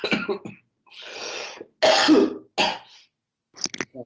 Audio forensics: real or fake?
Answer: real